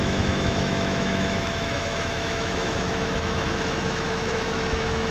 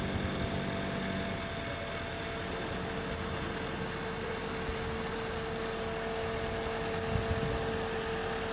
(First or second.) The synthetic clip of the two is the first